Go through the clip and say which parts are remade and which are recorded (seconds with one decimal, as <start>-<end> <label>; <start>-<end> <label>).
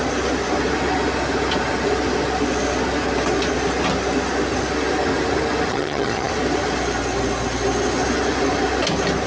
0.0-5.7 recorded; 5.7-6.3 remade; 6.3-9.3 recorded